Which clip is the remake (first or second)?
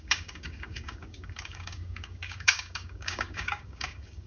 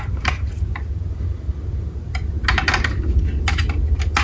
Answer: first